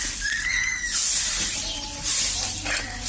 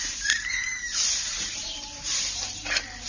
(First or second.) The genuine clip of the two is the first